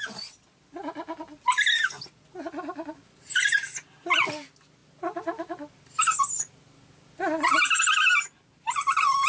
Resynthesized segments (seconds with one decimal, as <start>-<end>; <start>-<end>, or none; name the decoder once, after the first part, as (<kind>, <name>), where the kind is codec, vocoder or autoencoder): none